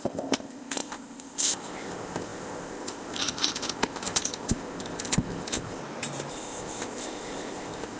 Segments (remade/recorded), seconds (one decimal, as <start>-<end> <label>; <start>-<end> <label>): 0.0-5.8 remade; 5.8-6.3 recorded; 6.3-8.0 remade